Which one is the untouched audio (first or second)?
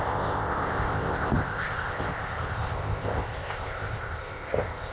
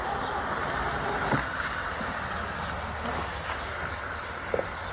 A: second